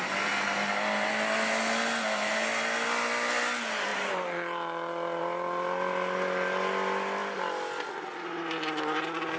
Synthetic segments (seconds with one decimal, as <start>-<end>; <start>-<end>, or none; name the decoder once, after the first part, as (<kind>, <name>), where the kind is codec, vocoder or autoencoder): none